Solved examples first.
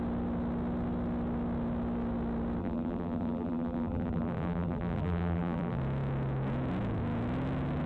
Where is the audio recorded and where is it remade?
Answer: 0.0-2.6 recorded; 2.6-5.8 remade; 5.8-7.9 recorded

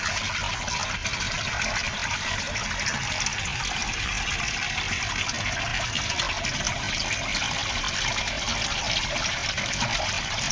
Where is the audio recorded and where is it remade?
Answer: 0.0-1.0 recorded; 1.0-5.0 remade; 5.0-8.5 recorded; 8.5-10.5 remade

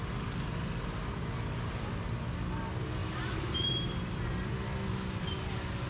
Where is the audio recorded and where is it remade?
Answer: 0.0-3.0 recorded; 3.0-4.5 remade; 4.5-4.9 recorded; 4.9-5.5 remade; 5.5-5.9 recorded